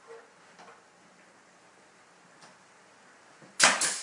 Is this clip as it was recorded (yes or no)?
yes